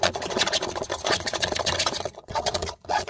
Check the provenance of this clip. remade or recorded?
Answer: remade